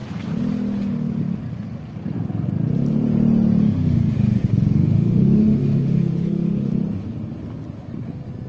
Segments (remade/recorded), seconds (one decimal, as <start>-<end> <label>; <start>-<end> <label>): 0.0-3.6 recorded; 3.6-6.7 remade; 6.7-8.5 recorded